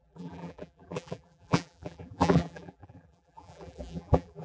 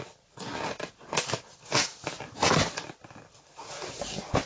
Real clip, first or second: second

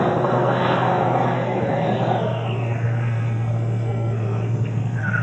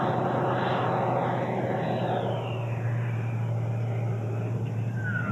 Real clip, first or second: second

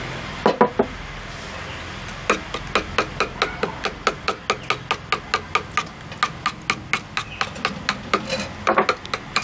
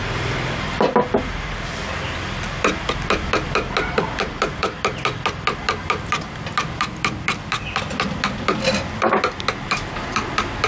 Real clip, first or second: first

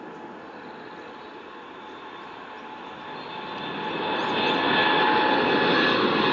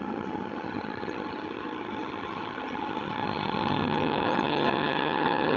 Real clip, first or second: first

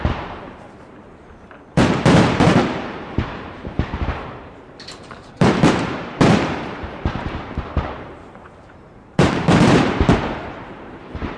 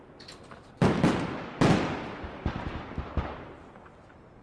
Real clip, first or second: second